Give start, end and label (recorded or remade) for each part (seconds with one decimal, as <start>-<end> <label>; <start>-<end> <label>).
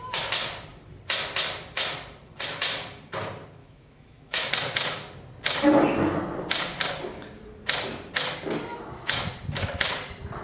0.0-3.6 recorded; 3.6-4.5 remade; 4.5-8.7 recorded; 8.7-9.2 remade; 9.2-10.4 recorded